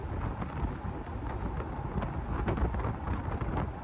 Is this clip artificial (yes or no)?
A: no